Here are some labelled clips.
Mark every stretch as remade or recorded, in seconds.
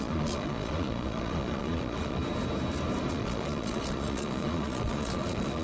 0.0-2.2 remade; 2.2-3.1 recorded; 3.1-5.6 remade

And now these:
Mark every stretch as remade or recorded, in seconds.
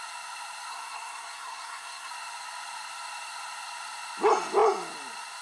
0.0-0.7 recorded; 0.7-2.1 remade; 2.1-5.4 recorded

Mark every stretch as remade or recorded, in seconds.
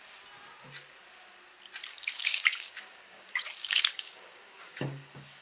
0.0-1.9 recorded; 1.9-5.4 remade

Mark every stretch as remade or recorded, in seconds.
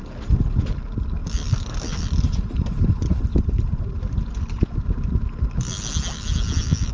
0.0-3.3 recorded; 3.3-4.2 remade; 4.2-6.9 recorded